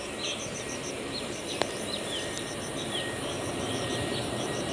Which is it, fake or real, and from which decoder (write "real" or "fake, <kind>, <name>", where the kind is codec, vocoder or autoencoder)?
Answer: fake, vocoder, BigVGAN v2